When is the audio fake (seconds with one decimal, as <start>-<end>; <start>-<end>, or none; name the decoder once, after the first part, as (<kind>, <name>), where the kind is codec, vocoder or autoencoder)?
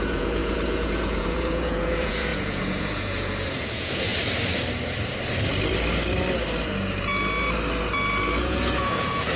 0.0-4.1 (vocoder, Vocos); 8.4-9.4